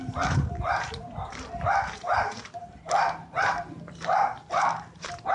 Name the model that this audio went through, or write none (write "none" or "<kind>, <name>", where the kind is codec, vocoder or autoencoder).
vocoder, BigVGAN v2